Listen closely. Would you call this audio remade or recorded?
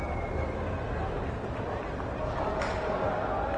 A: recorded